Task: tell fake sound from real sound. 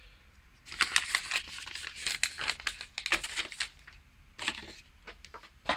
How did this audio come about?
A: real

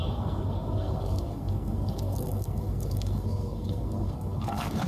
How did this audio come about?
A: fake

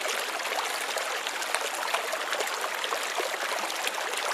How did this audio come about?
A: real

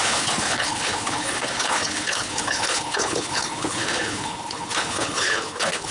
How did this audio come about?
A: fake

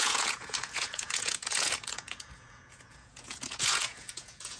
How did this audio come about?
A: fake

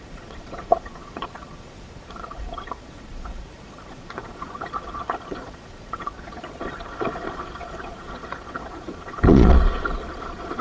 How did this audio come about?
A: fake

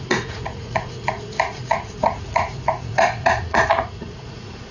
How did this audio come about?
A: fake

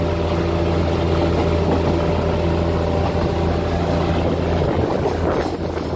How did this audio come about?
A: real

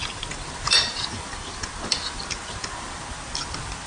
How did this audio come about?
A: real